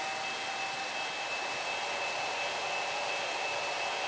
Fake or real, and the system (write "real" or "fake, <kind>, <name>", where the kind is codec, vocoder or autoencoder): real